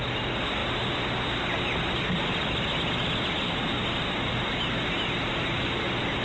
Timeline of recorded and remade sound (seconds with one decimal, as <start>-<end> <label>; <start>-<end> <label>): 0.0-6.2 recorded

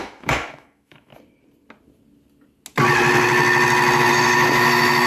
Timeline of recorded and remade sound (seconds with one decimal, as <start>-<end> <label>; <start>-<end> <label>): 0.0-1.1 remade; 1.1-4.1 recorded; 4.1-5.1 remade

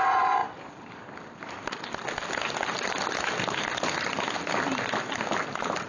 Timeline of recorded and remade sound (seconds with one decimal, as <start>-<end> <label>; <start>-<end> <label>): 0.0-5.9 recorded

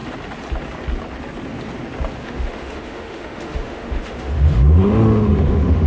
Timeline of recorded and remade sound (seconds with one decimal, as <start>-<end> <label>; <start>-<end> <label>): 0.0-2.2 recorded; 2.2-5.9 remade

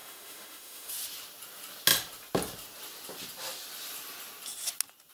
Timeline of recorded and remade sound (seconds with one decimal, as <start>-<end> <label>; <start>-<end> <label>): 0.0-0.9 remade; 0.9-5.1 recorded